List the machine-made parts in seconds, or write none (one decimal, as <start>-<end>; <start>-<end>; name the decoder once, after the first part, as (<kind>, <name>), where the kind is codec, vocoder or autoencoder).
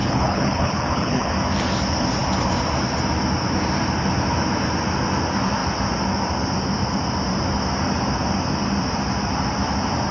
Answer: 0.0-1.3 (codec, HILCodec)